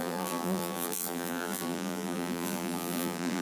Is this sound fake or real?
fake